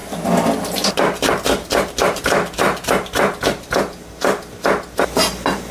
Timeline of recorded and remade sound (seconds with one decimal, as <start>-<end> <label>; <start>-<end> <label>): 0.0-5.7 recorded